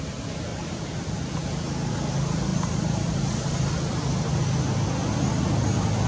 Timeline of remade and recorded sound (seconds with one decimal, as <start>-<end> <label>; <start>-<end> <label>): 0.0-0.5 recorded; 0.5-1.1 remade; 1.1-2.5 recorded; 2.5-3.7 remade; 3.7-6.1 recorded